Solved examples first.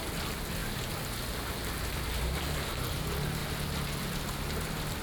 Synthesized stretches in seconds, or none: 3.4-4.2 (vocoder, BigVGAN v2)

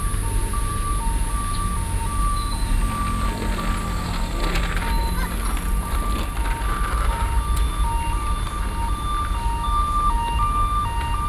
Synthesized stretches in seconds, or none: none

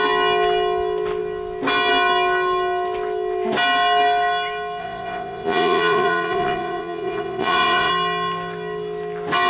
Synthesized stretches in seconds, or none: 4.8-7.9 (vocoder, Vocos)

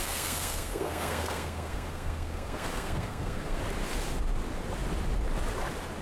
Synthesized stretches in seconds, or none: 0.0-3.6 (codec, SNAC)

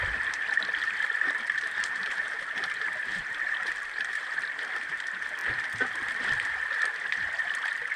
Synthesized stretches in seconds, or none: 1.8-2.5 (vocoder, BigVGAN v2); 3.1-4.3

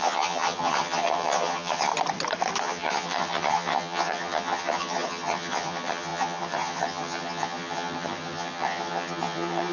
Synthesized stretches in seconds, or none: 0.0-1.9 (vocoder, HiFi-GAN); 2.6-9.7